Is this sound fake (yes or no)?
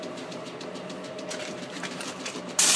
yes